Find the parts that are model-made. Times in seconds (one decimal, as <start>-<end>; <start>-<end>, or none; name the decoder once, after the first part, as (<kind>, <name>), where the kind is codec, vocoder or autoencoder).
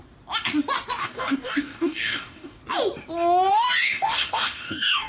1.0-2.6 (codec, DAC); 3.5-5.1